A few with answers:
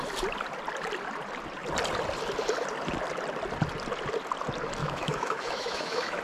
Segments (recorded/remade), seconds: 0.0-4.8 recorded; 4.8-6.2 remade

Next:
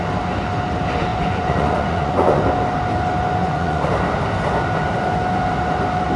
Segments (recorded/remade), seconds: 0.0-1.1 recorded; 1.1-2.4 remade; 2.4-3.4 recorded; 3.4-3.9 remade; 3.9-6.2 recorded